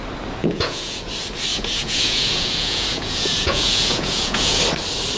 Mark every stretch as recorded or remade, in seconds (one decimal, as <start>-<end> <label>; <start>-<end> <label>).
0.0-0.4 recorded; 0.4-1.1 remade; 1.1-1.5 recorded; 1.5-4.6 remade; 4.6-5.2 recorded

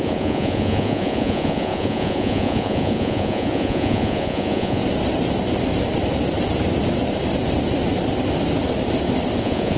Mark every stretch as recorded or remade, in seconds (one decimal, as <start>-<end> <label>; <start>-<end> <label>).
0.0-4.8 remade; 4.8-9.4 recorded; 9.4-9.8 remade

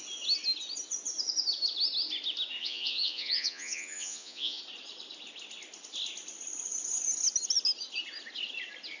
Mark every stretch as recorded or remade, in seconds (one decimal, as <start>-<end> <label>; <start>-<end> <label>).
0.0-2.6 recorded; 2.6-4.6 remade; 4.6-9.0 recorded

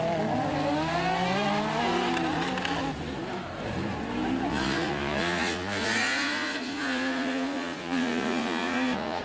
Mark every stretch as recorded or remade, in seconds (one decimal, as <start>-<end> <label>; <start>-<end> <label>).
0.0-4.5 recorded; 4.5-9.2 remade

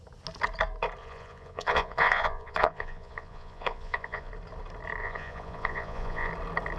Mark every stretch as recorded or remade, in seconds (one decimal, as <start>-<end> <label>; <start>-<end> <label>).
0.0-1.0 recorded; 1.0-4.3 remade; 4.3-5.0 recorded; 5.0-6.3 remade; 6.3-6.8 recorded